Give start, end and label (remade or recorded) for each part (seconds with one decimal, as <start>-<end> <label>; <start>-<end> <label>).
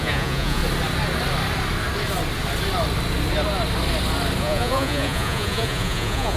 0.0-0.6 remade; 0.6-4.4 recorded; 4.4-6.4 remade